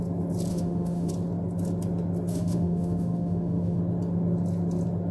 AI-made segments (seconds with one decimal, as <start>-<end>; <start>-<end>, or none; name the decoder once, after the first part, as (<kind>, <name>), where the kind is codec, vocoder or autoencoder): 0.5-1.1 (autoencoder, DAC-VAE); 2.3-3.8